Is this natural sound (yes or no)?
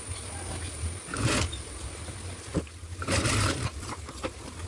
yes